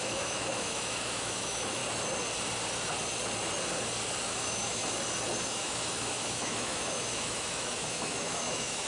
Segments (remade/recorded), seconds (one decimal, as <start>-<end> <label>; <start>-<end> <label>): 0.0-1.8 remade; 1.8-4.3 recorded; 4.3-4.8 remade; 4.8-5.5 recorded; 5.5-8.9 remade